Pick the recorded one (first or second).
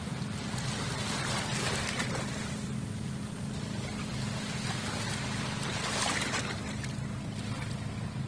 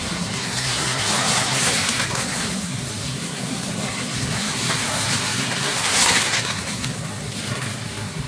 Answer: first